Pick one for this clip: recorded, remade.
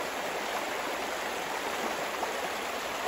recorded